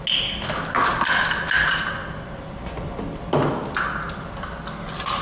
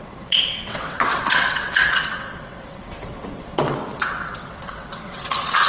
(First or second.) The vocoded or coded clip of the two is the second